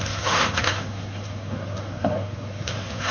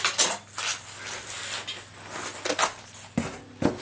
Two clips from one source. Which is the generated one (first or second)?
first